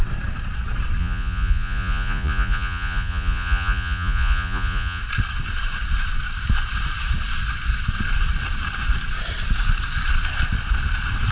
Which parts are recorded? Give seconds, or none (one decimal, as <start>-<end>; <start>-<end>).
0.0-1.0; 5.0-11.3